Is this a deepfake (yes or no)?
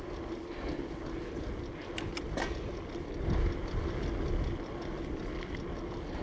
no